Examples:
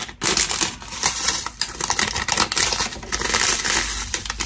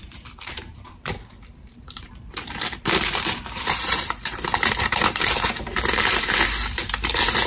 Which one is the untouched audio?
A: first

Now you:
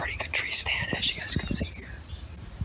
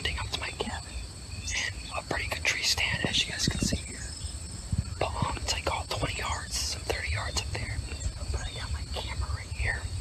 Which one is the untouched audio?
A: first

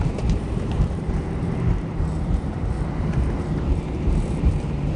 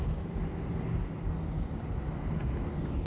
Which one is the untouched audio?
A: second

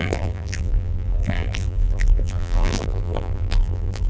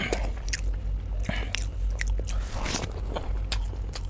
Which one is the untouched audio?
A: second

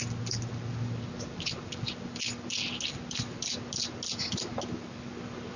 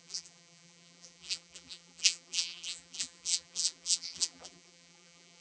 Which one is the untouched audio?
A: first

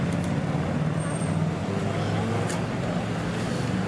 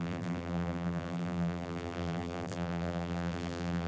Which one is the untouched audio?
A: first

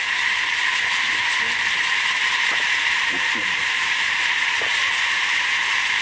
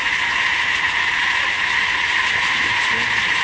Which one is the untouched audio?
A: second